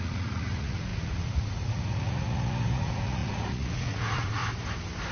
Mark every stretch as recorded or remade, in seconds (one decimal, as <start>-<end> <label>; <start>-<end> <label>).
0.0-4.4 remade; 4.4-5.1 recorded